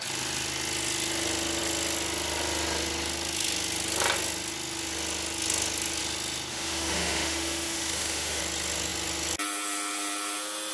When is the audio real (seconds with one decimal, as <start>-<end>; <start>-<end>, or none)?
0.0-6.5; 8.4-10.7